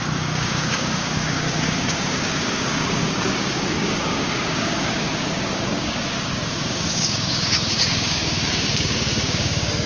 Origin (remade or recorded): remade